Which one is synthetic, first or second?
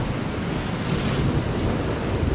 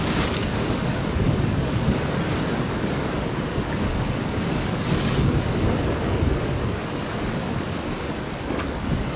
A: second